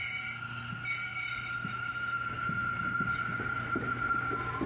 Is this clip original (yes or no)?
yes